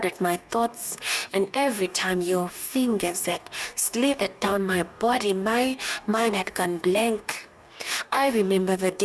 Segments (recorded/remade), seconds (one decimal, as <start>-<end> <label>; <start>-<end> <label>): 0.0-9.0 remade

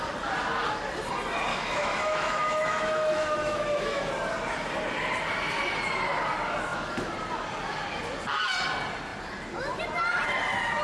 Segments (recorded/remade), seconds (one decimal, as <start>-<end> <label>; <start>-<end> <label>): 0.0-1.5 recorded; 1.5-4.1 remade; 4.1-10.8 recorded

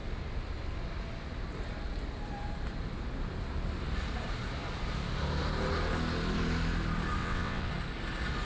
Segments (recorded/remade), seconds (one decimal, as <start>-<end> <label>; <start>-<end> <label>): 0.0-7.2 recorded; 7.2-7.7 remade; 7.7-8.4 recorded